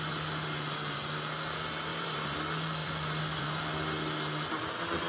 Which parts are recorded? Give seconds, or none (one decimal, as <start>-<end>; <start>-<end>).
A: 0.0-1.9; 2.4-2.8; 3.4-5.1